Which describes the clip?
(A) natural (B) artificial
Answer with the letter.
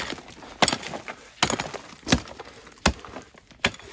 A